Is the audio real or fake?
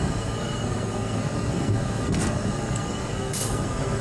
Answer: fake